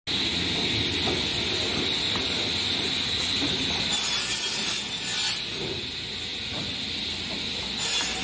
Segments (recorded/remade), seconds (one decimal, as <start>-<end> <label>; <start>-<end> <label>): 0.0-8.2 recorded